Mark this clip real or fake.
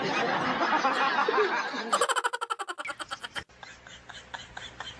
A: real